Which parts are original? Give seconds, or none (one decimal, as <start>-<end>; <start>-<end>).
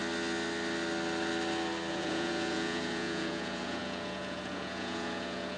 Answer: 0.0-1.9